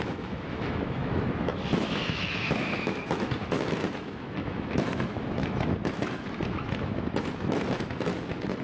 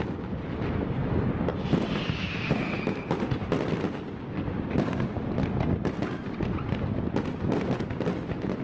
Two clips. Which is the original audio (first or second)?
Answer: second